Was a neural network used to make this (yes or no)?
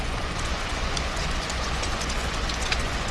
yes